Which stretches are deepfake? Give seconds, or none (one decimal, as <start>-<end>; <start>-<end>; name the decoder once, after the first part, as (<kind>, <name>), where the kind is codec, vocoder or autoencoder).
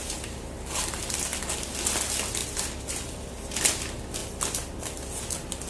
4.2-5.2 (vocoder, BigVGAN v2)